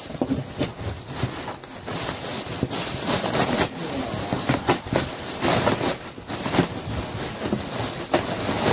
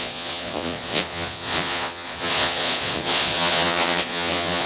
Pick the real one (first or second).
first